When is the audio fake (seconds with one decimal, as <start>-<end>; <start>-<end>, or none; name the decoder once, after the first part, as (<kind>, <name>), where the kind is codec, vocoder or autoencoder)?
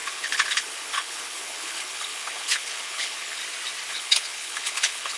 0.0-3.4 (codec, HILCodec); 3.9-5.2